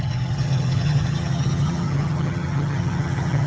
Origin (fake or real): fake